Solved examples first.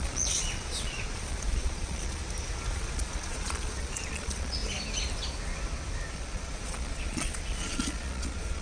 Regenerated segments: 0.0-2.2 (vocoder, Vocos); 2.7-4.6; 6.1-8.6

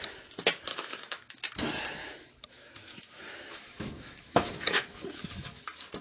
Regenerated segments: 0.7-1.4 (autoencoder, DAC-VAE); 2.0-5.6

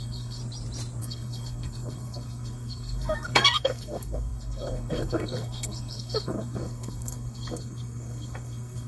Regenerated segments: 0.0-0.4 (codec, SNAC); 1.0-8.9

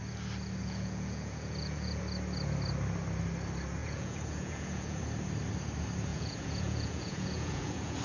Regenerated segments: 0.6-2.0 (vocoder, Vocos); 3.8-5.0; 6.1-8.0

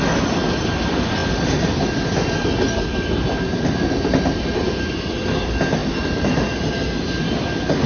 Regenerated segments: none

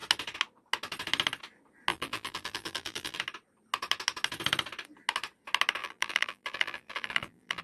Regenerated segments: 1.9-3.2 (vocoder, BigVGAN v2); 5.8-7.6

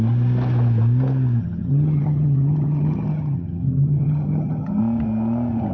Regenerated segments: 1.4-4.8 (vocoder, HiFi-GAN)

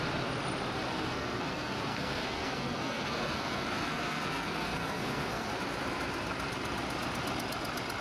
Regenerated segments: 0.9-5.6 (codec, SNAC)